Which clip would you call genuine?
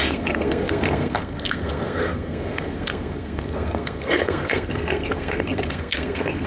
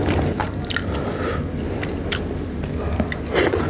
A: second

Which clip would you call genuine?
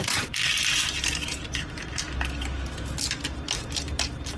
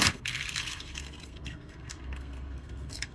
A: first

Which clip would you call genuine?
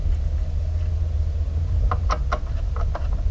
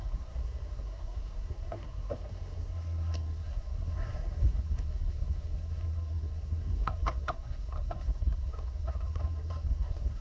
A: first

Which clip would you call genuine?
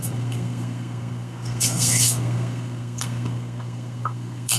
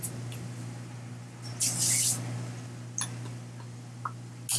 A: second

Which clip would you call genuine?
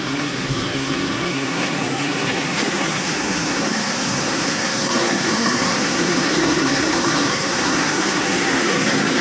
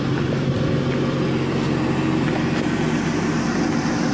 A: second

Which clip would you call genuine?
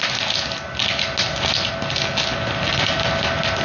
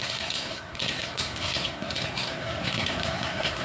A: first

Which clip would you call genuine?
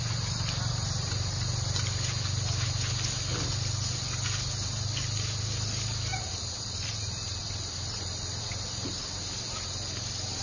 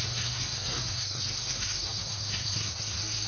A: first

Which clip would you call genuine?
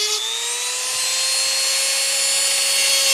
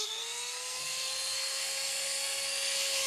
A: first